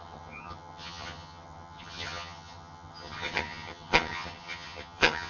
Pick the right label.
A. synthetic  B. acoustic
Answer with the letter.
A